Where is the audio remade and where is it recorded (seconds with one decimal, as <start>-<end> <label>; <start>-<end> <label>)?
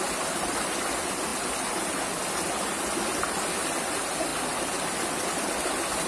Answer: 0.0-6.1 recorded